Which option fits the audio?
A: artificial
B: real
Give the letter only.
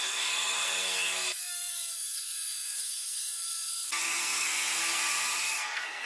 A